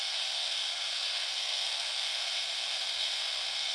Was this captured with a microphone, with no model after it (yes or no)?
no